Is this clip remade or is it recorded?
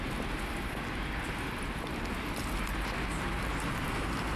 recorded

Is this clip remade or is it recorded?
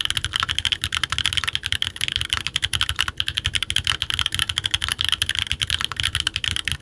recorded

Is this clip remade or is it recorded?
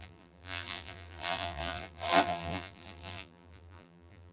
remade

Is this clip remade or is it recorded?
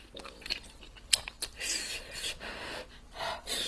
recorded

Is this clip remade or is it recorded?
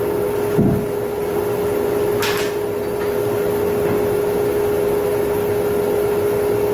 recorded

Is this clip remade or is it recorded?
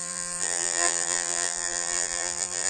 remade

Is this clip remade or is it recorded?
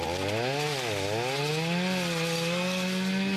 recorded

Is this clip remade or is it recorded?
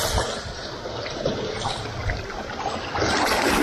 recorded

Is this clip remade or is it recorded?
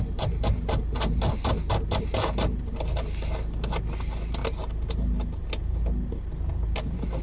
recorded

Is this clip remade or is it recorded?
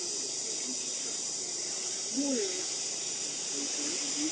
recorded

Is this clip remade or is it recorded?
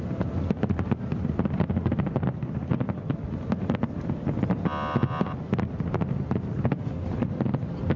recorded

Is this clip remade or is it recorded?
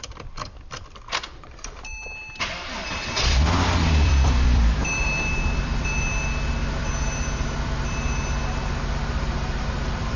remade